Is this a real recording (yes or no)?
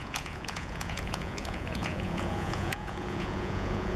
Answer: no